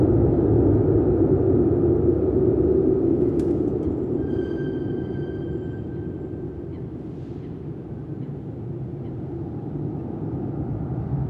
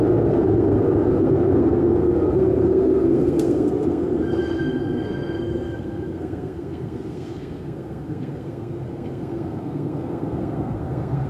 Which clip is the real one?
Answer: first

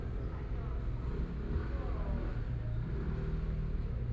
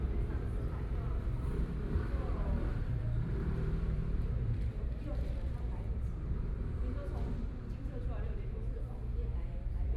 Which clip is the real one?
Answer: first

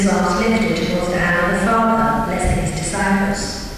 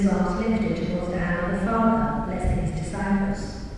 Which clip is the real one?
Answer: first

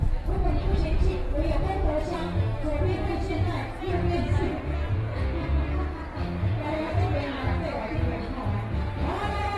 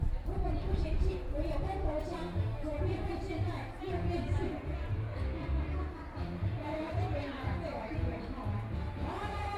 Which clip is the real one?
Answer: first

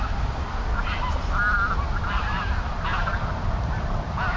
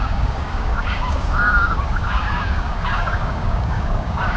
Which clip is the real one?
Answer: first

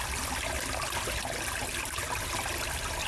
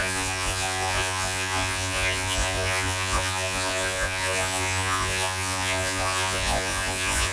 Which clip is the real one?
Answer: first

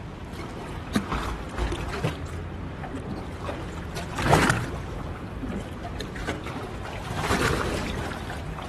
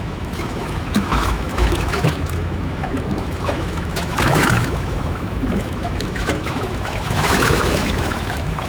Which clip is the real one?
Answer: first